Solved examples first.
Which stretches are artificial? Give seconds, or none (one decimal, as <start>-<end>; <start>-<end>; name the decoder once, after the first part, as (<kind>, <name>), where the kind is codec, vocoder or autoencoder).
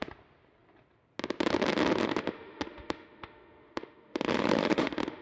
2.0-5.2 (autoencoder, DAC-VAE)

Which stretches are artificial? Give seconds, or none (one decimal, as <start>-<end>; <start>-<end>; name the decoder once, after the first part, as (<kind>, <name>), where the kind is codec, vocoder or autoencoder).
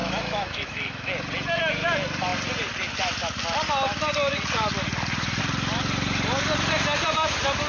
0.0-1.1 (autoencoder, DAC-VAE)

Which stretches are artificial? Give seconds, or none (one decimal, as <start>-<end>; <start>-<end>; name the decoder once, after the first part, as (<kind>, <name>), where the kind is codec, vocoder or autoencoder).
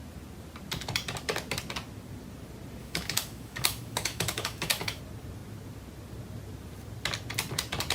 2.8-5.0 (autoencoder, DAC-VAE)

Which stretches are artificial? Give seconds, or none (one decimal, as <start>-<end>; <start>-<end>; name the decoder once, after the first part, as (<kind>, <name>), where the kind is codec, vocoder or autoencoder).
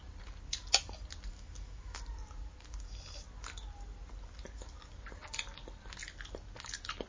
1.3-2.0 (autoencoder, DAC-VAE)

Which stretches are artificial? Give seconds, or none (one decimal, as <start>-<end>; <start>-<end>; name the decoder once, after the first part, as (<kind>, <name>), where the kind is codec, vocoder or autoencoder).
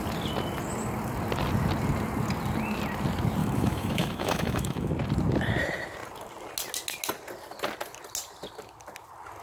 3.4-4.9 (autoencoder, DAC-VAE)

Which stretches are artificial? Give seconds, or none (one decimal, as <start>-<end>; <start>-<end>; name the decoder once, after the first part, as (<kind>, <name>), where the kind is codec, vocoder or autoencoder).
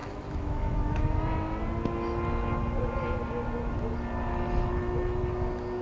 0.0-1.1 (autoencoder, DAC-VAE); 4.3-5.2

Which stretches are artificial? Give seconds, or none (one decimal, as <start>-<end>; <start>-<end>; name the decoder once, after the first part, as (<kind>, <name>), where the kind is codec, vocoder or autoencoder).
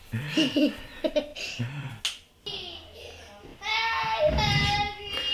none